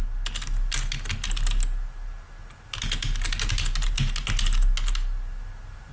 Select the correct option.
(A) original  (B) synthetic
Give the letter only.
A